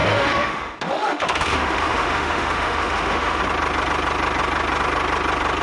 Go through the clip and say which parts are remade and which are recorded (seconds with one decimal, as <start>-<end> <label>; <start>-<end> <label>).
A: 0.0-3.4 remade; 3.4-5.6 recorded